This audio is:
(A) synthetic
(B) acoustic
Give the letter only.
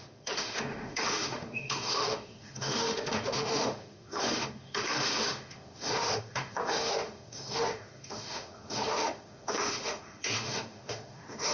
A